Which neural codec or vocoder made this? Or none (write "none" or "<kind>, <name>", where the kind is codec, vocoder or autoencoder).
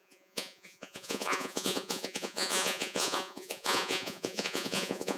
vocoder, Vocos